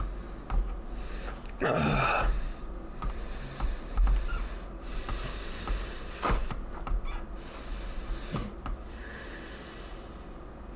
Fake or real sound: real